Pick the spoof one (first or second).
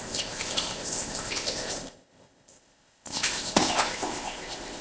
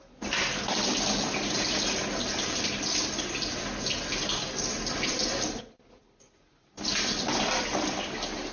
first